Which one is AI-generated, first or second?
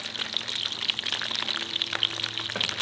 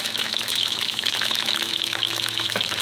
second